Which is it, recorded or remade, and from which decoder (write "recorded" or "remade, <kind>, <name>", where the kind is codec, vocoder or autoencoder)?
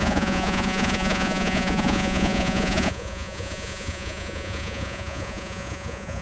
remade, vocoder, Vocos